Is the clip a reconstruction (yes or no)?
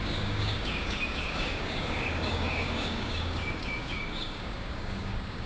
yes